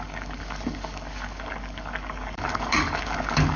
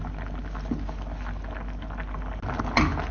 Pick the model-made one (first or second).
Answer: first